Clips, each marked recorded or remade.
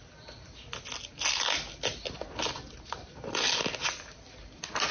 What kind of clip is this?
recorded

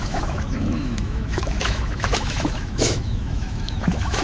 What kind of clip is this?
remade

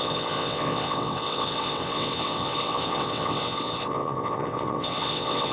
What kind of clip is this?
remade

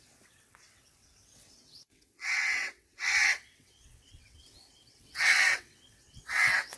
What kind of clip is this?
remade